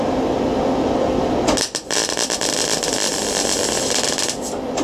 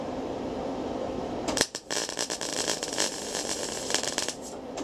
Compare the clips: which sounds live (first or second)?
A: first